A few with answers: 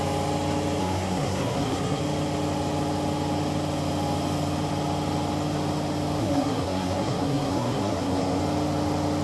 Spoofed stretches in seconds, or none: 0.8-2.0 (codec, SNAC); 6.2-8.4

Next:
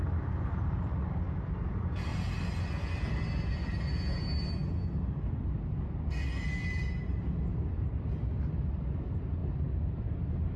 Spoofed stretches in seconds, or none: none